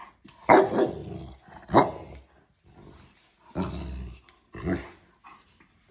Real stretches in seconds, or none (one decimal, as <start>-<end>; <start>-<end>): 0.0-5.9